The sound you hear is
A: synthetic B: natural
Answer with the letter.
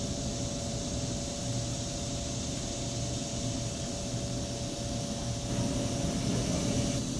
B